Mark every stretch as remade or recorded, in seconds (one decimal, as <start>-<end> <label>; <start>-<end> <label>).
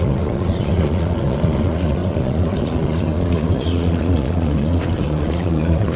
0.0-6.0 remade